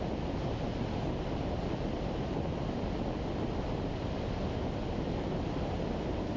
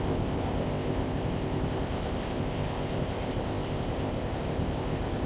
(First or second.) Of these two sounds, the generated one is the second